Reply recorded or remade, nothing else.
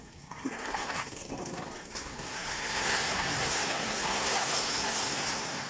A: remade